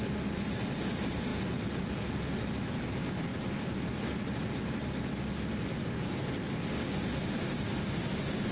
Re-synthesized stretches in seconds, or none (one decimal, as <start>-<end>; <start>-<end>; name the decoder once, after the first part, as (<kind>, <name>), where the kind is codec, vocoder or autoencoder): none